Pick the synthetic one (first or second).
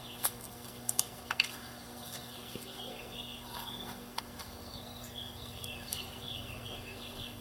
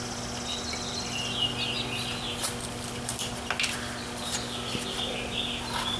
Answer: first